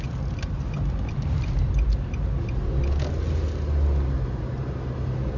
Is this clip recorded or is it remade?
recorded